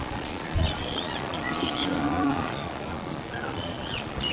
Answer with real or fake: fake